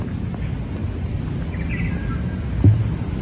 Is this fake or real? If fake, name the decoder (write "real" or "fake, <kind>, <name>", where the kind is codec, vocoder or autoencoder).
real